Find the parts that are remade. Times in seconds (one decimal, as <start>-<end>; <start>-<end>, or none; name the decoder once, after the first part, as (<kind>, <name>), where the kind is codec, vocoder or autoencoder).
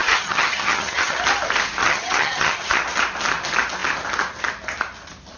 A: 0.0-1.2 (vocoder, HiFi-GAN); 1.8-2.8